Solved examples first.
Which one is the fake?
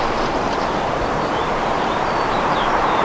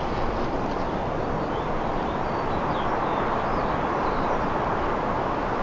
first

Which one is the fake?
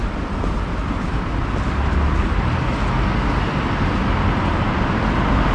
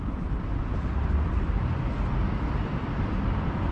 second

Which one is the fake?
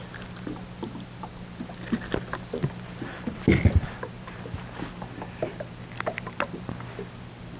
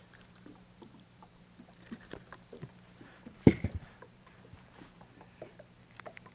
second